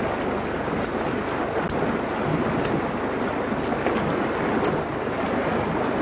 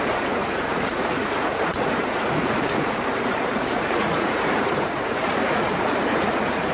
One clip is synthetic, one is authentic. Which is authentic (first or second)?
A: first